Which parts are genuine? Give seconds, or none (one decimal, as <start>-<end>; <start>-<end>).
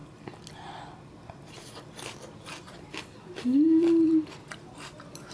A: 0.0-3.2